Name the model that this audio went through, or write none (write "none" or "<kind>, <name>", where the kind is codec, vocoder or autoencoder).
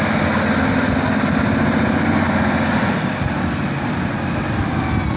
none